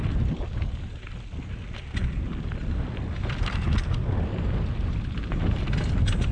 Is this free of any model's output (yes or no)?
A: yes